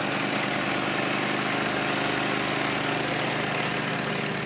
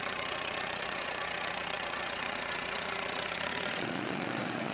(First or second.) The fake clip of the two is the second